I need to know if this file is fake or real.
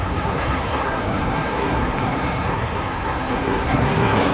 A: fake